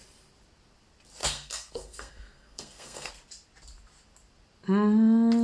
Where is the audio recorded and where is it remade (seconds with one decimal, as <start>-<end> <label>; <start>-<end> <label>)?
0.0-1.2 recorded; 1.2-3.1 remade; 3.1-5.4 recorded

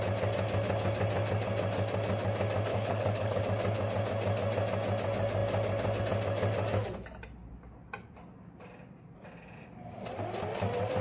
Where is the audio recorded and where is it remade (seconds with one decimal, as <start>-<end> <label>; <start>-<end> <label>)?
0.0-2.7 recorded; 2.7-3.4 remade; 3.4-11.0 recorded

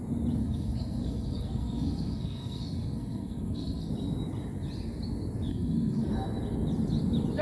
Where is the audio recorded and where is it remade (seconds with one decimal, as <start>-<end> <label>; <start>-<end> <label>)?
0.0-0.4 recorded; 0.4-3.9 remade; 3.9-5.5 recorded; 5.5-6.1 remade; 6.1-7.4 recorded

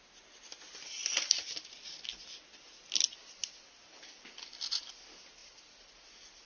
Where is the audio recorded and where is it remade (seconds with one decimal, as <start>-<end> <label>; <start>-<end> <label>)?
0.0-6.5 recorded

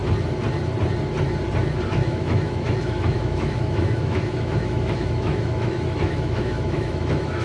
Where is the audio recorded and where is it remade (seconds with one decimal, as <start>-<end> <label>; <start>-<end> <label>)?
0.0-1.9 recorded; 1.9-7.4 remade